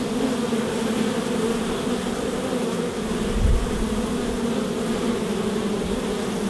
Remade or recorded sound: recorded